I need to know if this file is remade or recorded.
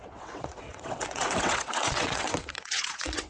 remade